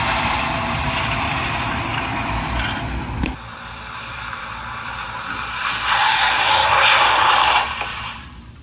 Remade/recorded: remade